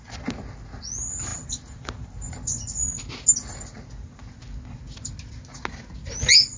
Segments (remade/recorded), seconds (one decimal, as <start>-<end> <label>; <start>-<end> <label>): 0.0-6.6 recorded